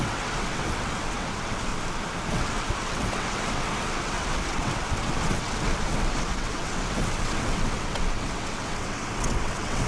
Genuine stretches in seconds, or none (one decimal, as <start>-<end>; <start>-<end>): 1.7-2.3

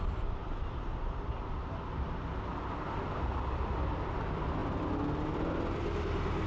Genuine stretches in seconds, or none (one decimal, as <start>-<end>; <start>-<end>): 0.0-6.5

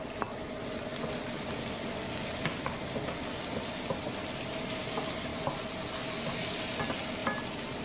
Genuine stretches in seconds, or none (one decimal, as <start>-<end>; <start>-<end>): 0.0-7.8